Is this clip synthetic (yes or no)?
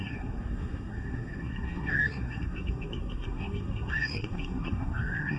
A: yes